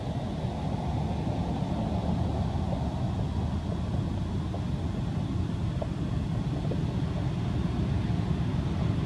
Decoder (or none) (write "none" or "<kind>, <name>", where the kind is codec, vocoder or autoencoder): none